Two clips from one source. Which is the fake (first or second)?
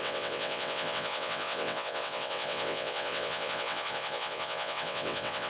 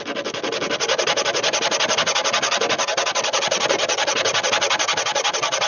first